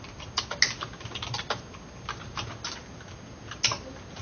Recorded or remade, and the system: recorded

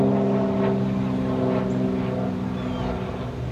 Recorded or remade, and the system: recorded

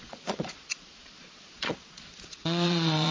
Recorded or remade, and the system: remade, vocoder, Vocos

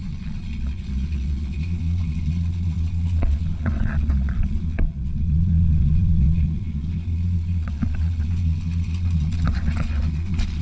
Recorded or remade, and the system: remade, vocoder, Vocos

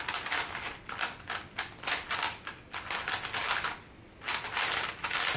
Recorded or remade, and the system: recorded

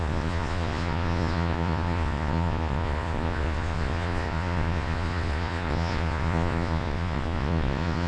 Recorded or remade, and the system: remade, vocoder, Vocos